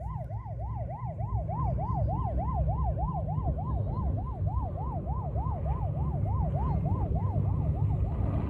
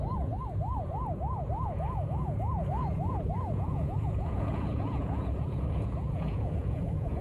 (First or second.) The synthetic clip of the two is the second